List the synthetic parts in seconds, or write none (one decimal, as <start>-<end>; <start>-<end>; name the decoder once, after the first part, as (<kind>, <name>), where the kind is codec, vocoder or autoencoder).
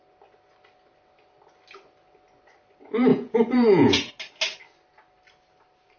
3.1-4.1 (vocoder, Vocos)